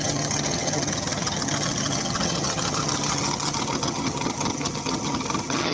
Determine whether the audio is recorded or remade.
remade